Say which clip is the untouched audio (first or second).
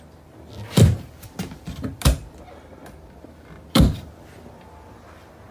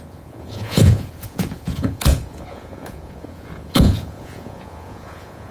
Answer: first